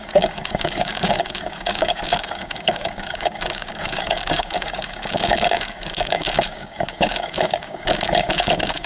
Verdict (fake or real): fake